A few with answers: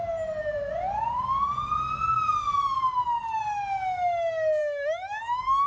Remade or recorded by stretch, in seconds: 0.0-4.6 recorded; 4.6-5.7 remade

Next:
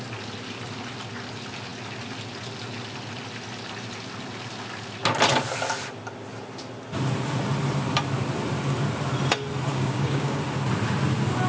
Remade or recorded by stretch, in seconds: 0.0-9.7 recorded; 9.7-10.4 remade; 10.4-11.5 recorded

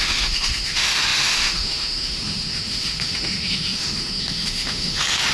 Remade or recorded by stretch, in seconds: 0.0-5.3 remade

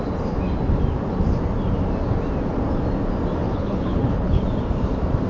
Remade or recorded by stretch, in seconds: 0.0-3.4 recorded; 3.4-4.4 remade; 4.4-5.3 recorded